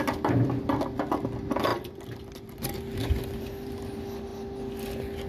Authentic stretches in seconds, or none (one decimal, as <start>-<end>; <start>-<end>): 0.0-5.3